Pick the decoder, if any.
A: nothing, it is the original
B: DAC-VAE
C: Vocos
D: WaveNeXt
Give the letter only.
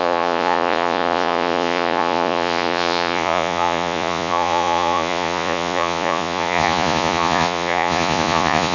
C